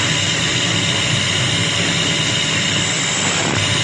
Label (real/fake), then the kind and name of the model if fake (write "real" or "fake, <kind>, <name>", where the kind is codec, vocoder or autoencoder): real